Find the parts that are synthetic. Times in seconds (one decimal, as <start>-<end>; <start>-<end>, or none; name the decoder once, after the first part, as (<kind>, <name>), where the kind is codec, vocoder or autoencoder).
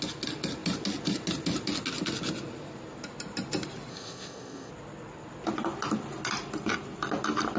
3.9-4.7 (codec, ZipCodec)